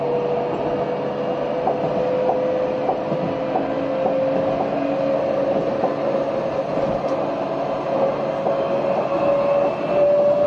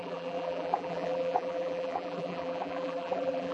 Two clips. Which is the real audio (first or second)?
first